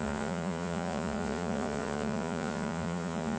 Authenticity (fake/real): fake